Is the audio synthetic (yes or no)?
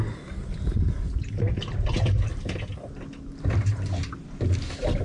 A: no